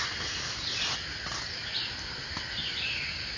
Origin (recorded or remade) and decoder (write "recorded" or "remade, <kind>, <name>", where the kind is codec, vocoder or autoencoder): recorded